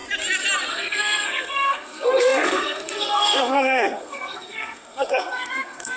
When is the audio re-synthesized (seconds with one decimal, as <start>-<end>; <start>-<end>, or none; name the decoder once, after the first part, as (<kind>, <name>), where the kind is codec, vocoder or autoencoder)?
0.7-6.0 (codec, SNAC)